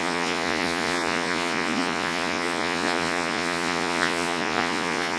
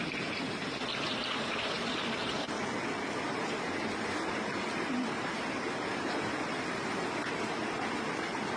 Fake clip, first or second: first